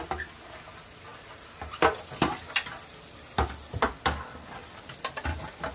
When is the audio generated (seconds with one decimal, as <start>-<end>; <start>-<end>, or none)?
1.1-2.2